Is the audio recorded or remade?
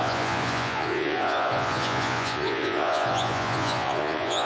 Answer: remade